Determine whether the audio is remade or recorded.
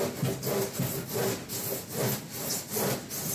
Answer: recorded